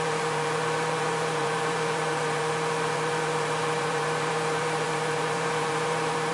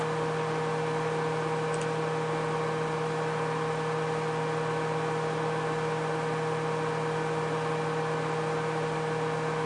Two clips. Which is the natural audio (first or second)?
second